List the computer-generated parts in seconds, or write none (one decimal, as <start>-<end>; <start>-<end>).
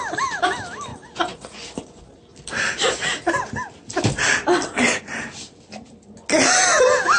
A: 0.9-2.0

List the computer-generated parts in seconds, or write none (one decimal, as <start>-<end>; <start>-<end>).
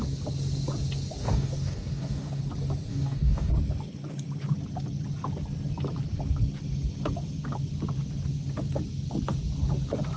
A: 1.2-2.4; 2.9-3.5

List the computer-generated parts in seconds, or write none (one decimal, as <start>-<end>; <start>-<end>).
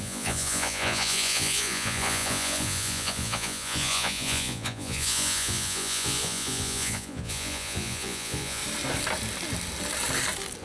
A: 0.0-8.6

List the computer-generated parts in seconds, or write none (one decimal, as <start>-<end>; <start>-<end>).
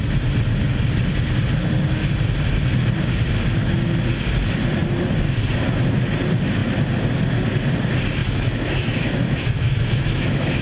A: 8.2-10.6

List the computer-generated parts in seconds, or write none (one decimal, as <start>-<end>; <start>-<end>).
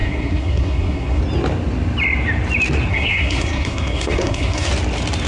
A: 0.0-1.2; 2.9-4.7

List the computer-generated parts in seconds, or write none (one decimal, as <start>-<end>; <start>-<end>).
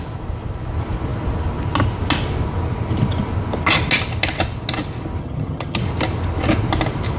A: 5.2-5.8